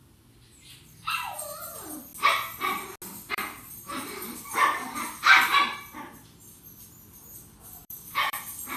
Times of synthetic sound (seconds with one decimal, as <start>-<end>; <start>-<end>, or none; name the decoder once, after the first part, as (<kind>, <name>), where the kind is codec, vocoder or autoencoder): 0.0-2.1 (vocoder, BigVGAN v2); 3.3-5.5; 6.6-8.8

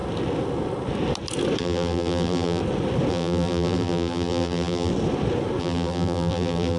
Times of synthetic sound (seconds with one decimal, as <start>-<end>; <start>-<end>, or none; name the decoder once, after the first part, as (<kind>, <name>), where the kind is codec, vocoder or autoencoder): 1.6-2.6 (vocoder, BigVGAN v2); 3.1-4.9; 5.6-6.8

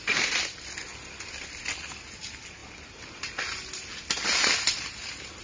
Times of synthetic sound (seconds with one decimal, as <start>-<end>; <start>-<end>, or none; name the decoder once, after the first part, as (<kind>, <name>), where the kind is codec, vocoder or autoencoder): none

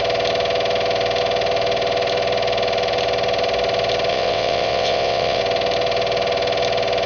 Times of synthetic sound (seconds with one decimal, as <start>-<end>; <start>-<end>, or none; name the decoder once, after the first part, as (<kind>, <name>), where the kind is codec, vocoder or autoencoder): 4.1-5.4 (vocoder, WaveNeXt)